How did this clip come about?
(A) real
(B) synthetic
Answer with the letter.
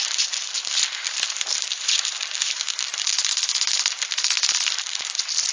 A